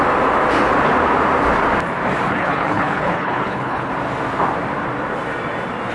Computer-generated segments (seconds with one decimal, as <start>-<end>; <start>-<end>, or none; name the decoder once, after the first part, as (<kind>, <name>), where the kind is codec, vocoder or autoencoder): 2.3-3.9 (codec, HILCodec)